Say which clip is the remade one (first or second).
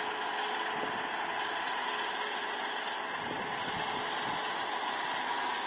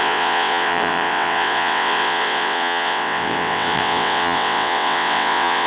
second